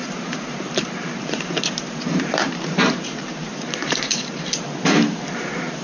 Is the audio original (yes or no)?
no